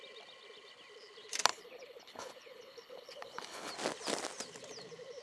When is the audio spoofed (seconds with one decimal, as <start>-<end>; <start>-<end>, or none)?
1.5-3.7